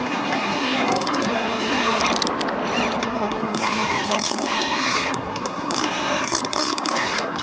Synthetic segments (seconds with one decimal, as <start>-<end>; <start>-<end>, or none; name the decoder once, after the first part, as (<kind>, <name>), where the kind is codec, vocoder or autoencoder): 0.0-2.0 (codec, SNAC); 3.0-7.4